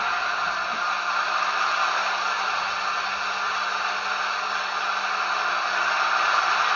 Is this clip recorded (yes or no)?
yes